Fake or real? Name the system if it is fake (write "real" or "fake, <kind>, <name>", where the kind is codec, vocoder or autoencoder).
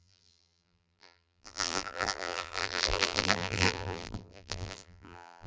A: fake, vocoder, BigVGAN v2